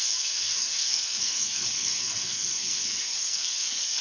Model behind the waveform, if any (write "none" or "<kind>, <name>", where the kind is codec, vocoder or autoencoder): codec, SNAC